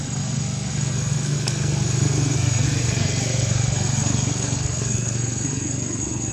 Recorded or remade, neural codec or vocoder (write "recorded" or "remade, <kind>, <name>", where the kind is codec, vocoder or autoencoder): remade, codec, SNAC